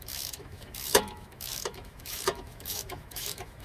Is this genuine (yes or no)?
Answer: no